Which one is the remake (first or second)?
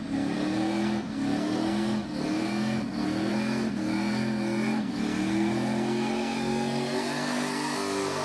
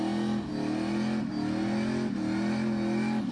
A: first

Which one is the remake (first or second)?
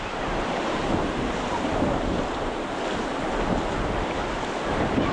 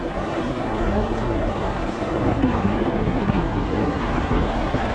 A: second